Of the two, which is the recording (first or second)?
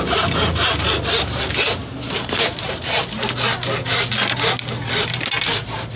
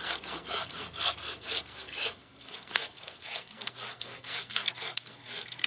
first